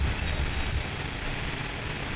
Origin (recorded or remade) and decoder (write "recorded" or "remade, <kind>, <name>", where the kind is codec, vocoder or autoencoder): recorded